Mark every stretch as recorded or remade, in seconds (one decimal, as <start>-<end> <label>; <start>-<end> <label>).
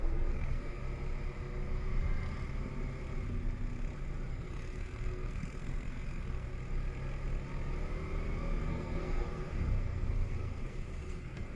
0.0-0.8 remade; 0.8-4.3 recorded; 4.3-6.5 remade; 6.5-8.6 recorded; 8.6-11.6 remade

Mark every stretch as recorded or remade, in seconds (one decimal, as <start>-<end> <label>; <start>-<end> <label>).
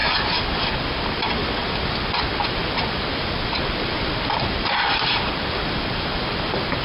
0.0-2.3 recorded; 2.3-6.8 remade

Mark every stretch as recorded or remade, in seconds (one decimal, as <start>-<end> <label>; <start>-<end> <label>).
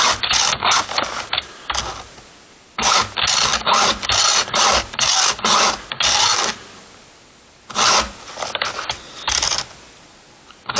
0.0-10.8 recorded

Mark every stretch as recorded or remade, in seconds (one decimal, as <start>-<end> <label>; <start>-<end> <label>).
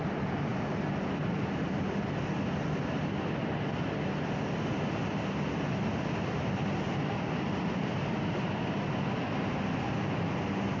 0.0-10.8 recorded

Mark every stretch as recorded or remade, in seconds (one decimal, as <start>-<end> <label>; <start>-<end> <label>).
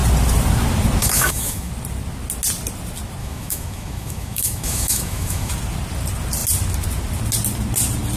0.0-1.0 recorded; 1.0-1.7 remade; 1.7-3.2 recorded; 3.2-5.5 remade; 5.5-8.2 recorded